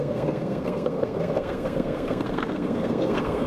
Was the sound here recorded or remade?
remade